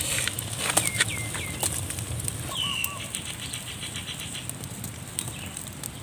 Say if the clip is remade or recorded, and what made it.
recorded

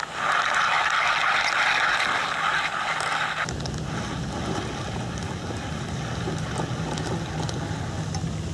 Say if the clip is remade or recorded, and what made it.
recorded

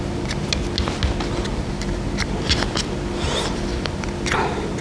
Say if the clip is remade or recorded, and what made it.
recorded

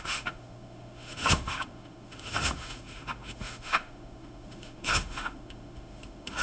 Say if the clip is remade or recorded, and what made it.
remade, autoencoder, DAC-VAE